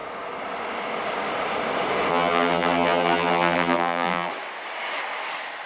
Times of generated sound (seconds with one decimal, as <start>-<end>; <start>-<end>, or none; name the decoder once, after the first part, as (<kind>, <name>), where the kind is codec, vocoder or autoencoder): 2.1-4.3 (vocoder, BigVGAN v2)